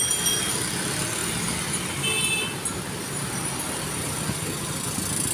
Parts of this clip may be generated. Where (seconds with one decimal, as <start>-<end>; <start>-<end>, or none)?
none